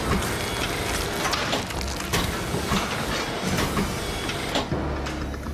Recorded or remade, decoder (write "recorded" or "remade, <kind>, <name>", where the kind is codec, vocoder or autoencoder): recorded